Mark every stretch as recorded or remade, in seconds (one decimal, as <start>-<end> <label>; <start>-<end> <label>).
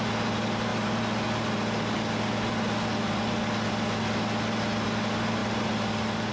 0.0-6.3 recorded